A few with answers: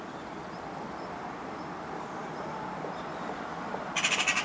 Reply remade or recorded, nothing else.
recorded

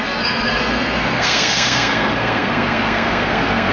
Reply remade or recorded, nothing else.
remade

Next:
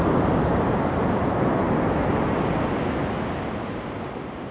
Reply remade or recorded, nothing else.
recorded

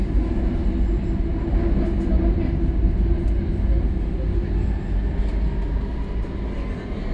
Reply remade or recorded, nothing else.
recorded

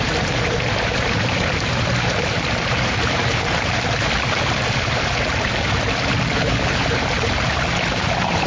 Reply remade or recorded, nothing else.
remade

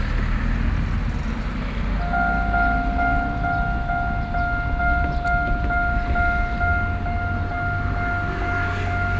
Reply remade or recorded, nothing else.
recorded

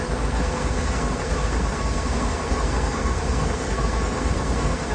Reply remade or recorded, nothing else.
remade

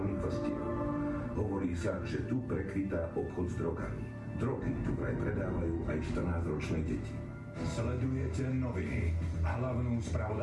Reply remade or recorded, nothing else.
recorded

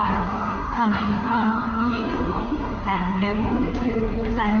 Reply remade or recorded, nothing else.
remade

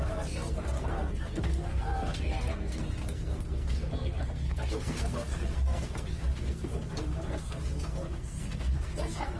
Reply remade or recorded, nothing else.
remade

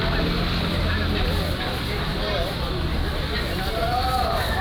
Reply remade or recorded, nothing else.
recorded